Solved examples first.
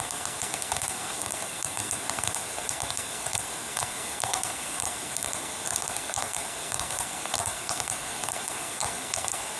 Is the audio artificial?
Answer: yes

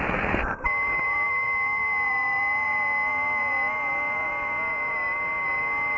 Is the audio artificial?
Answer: yes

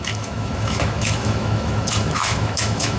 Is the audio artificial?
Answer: yes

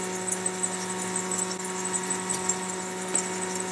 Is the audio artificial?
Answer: no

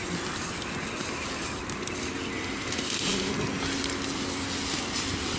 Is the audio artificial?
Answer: no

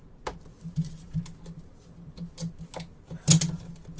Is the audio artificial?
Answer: no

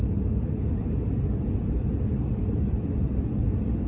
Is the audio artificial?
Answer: no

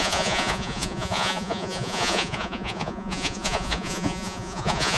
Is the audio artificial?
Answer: yes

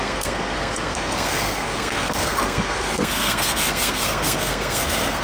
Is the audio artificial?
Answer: yes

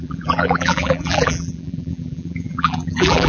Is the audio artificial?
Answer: yes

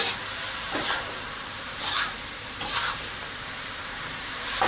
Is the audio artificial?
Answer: yes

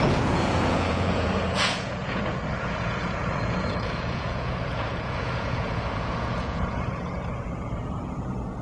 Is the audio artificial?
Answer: yes